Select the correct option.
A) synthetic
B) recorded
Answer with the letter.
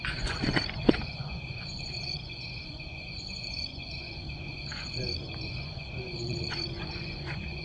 A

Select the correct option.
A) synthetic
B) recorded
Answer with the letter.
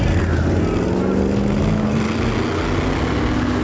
B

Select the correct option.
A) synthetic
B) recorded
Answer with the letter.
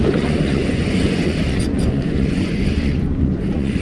A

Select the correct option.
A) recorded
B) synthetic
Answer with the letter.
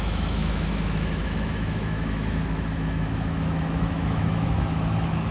B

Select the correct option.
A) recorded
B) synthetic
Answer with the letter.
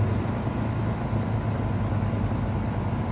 A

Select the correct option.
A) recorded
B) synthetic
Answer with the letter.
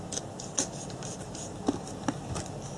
A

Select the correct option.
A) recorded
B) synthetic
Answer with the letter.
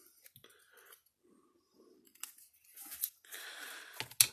A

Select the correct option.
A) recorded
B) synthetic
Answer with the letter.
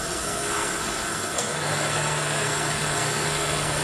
B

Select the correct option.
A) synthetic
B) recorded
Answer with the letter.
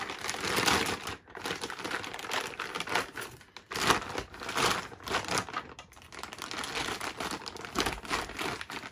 B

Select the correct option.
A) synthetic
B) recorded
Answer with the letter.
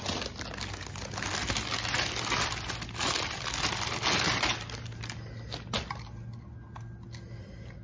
B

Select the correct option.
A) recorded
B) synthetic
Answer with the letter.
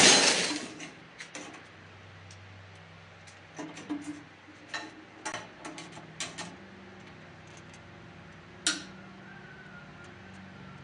A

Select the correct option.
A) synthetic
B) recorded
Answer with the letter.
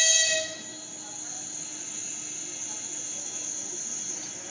B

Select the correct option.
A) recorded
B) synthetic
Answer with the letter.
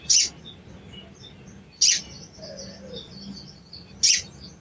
A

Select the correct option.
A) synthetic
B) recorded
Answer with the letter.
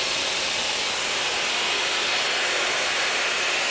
B